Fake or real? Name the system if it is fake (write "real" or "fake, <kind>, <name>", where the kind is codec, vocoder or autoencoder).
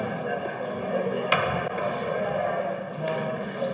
real